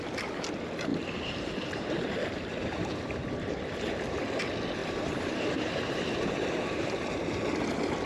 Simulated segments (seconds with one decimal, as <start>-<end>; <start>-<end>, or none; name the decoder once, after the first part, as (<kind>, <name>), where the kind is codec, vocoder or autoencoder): 0.9-3.5 (vocoder, BigVGAN v2); 4.8-7.0

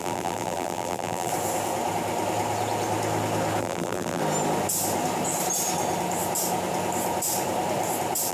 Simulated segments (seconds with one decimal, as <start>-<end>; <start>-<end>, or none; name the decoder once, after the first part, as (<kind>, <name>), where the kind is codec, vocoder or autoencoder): 0.0-1.3 (vocoder, BigVGAN v2); 3.6-4.2

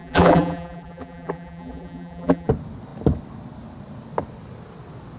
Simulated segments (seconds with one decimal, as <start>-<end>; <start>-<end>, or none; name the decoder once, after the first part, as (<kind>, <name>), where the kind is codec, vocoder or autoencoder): 0.0-2.5 (vocoder, BigVGAN v2)